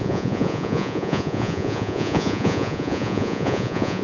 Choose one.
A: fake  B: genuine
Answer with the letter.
A